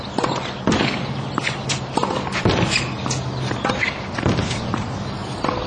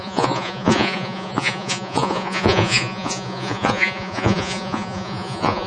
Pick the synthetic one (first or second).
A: second